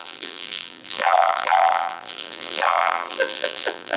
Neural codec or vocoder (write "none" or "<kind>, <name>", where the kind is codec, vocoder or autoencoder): vocoder, BigVGAN v2